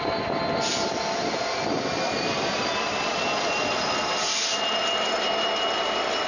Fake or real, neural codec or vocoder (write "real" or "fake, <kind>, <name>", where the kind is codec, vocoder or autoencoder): real